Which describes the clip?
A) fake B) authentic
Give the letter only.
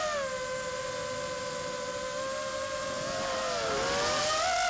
B